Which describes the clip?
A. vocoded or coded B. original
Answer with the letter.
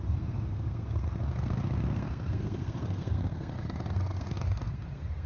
A